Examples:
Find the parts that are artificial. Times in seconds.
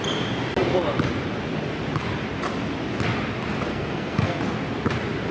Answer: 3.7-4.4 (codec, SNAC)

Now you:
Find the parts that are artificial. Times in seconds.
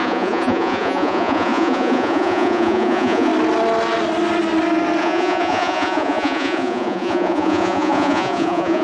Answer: 0.0-3.3 (vocoder, Vocos); 5.0-8.8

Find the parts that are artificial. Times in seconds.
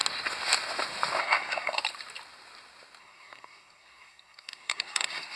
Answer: 1.2-1.8 (codec, SNAC); 3.0-5.4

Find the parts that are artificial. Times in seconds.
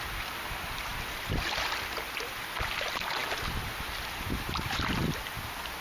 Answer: none